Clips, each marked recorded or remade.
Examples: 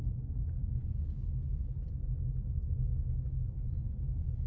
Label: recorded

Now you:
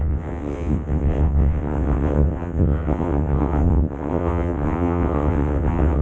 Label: remade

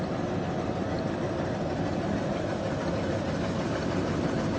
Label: recorded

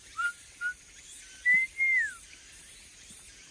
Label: recorded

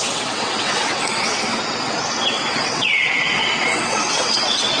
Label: remade